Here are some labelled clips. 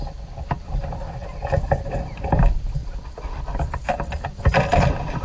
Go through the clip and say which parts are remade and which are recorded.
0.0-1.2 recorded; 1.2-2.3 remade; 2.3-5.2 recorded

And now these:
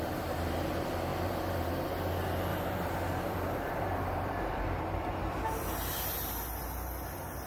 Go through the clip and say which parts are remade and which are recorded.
0.0-1.1 recorded; 1.1-1.7 remade; 1.7-2.5 recorded; 2.5-5.1 remade; 5.1-7.5 recorded

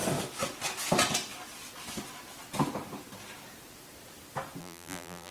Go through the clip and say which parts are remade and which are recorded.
0.0-4.6 recorded; 4.6-5.3 remade

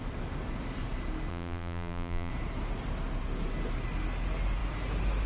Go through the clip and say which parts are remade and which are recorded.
0.0-1.3 recorded; 1.3-2.3 remade; 2.3-5.3 recorded

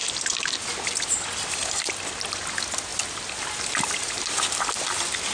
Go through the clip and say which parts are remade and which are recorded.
0.0-5.3 recorded

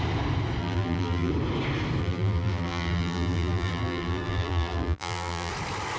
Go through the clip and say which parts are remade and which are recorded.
0.0-0.6 recorded; 0.6-1.3 remade; 1.3-2.0 recorded; 2.0-5.5 remade; 5.5-6.0 recorded